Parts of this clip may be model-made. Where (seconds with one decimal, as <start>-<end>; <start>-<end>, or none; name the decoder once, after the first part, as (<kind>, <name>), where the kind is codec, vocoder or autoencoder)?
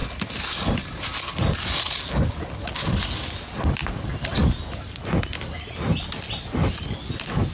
none